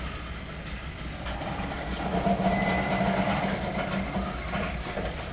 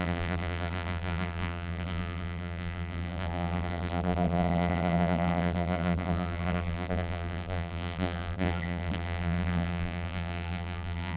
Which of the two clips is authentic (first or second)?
first